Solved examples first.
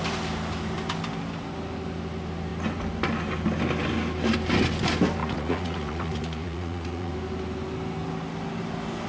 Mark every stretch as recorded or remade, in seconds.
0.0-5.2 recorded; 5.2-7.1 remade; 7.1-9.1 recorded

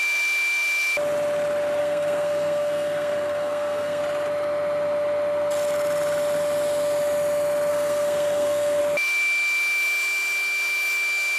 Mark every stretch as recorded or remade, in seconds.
0.0-1.8 recorded; 1.8-4.0 remade; 4.0-7.7 recorded; 7.7-8.8 remade; 8.8-11.4 recorded

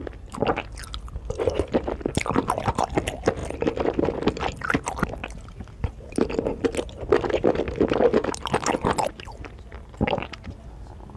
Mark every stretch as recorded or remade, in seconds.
0.0-11.2 recorded